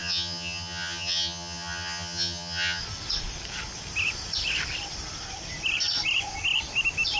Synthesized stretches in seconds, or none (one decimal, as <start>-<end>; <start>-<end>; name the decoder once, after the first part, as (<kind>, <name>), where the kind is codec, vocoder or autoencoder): 0.0-2.8 (vocoder, HiFi-GAN)

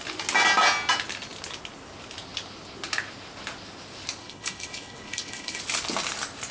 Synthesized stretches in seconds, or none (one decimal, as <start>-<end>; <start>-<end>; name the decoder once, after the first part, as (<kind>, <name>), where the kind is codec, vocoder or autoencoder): 4.2-5.6 (codec, HILCodec)